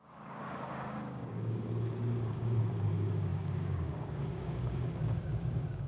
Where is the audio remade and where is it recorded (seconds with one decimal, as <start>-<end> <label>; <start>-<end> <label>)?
0.0-5.9 remade